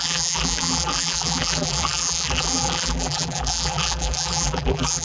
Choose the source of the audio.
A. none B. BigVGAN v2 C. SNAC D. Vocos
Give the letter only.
B